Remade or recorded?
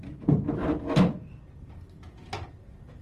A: recorded